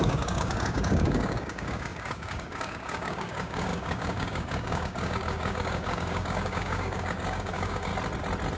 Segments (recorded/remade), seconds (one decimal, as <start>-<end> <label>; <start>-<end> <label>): 0.0-7.9 remade; 7.9-8.6 recorded